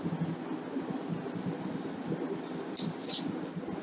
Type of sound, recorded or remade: recorded